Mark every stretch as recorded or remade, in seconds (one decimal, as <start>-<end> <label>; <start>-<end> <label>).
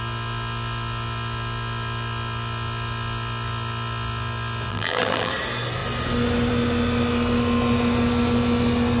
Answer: 0.0-4.7 recorded; 4.7-5.3 remade; 5.3-9.0 recorded